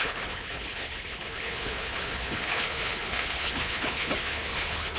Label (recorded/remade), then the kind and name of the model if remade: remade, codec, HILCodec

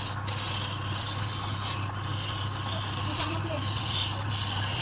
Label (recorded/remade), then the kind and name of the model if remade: recorded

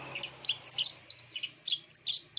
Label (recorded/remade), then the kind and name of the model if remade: recorded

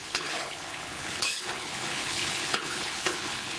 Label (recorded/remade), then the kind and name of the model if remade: remade, codec, HILCodec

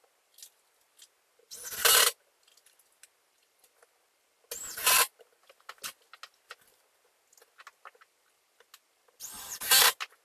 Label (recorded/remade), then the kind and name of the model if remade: recorded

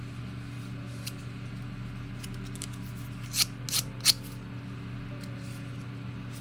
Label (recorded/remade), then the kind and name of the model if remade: recorded